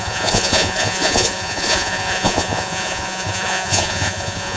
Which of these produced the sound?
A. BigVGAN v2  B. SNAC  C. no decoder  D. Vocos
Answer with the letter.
D